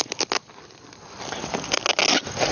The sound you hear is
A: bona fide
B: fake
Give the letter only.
A